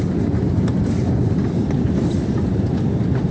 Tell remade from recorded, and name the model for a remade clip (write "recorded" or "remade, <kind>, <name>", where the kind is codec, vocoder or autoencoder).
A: recorded